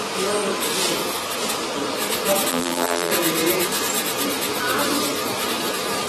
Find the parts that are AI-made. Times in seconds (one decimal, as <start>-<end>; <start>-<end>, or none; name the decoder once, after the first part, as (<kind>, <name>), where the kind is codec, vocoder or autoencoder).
2.5-3.1 (vocoder, BigVGAN v2)